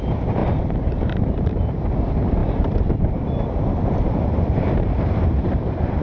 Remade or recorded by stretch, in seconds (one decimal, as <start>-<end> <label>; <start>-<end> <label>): 0.0-6.0 remade